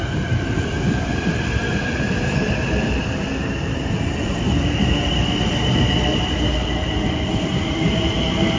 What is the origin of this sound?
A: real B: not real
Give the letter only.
B